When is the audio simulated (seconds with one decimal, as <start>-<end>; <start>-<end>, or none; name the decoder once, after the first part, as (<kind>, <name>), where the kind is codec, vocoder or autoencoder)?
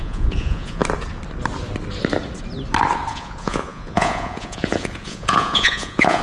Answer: 0.0-0.8 (vocoder, Vocos); 3.1-6.2